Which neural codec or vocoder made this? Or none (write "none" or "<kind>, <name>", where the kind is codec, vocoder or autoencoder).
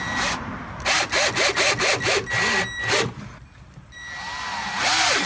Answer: none